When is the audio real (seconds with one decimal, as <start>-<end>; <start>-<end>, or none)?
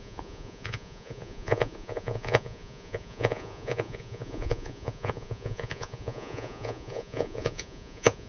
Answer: none